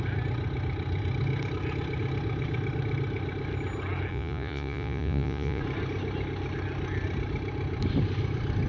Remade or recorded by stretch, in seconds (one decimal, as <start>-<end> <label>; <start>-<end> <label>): 0.0-4.1 recorded; 4.1-5.6 remade; 5.6-8.7 recorded